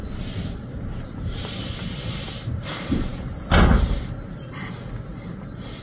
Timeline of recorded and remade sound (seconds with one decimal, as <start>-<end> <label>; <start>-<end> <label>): 0.0-2.6 remade; 2.6-5.8 recorded